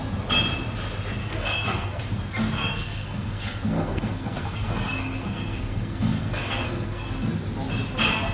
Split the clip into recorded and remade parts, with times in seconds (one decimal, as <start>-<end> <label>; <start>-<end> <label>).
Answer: 0.0-1.2 recorded; 1.2-2.0 remade; 2.0-2.6 recorded; 2.6-7.1 remade; 7.1-8.3 recorded